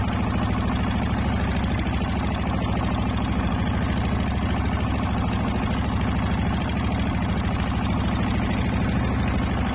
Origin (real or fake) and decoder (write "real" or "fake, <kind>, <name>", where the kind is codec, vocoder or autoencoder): real